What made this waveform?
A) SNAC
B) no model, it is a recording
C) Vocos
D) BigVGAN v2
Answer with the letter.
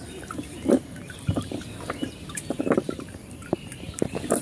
D